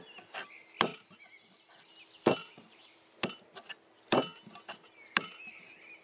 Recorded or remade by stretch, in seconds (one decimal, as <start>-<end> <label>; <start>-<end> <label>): 0.0-0.9 recorded; 0.9-1.9 remade; 1.9-2.4 recorded; 2.4-2.9 remade; 2.9-6.0 recorded